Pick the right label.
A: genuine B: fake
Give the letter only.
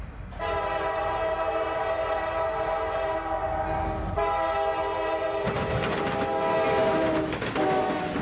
A